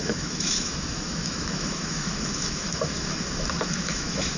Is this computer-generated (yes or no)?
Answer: yes